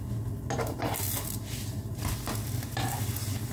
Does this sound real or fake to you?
real